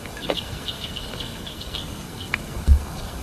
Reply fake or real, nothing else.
fake